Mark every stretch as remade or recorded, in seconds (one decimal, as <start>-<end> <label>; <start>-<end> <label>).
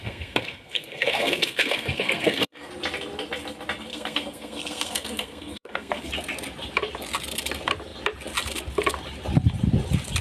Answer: 0.0-2.7 remade; 2.7-3.9 recorded; 3.9-6.1 remade; 6.1-10.2 recorded